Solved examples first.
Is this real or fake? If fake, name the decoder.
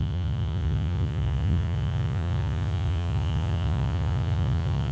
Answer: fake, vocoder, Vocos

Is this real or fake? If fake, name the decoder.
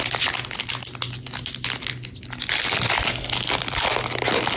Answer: real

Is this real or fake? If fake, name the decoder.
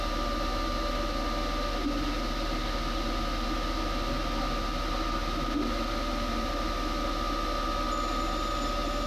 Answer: real